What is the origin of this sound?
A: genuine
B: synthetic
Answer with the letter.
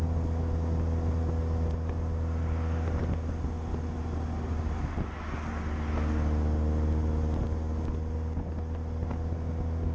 A